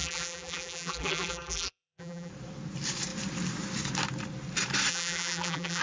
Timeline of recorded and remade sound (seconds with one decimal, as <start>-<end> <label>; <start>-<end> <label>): 0.0-2.3 remade; 2.3-4.9 recorded; 4.9-5.8 remade